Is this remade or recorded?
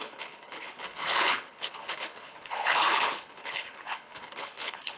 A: remade